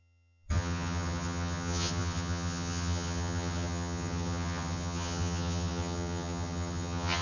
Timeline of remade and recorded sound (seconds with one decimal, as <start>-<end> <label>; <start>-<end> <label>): 0.0-7.2 remade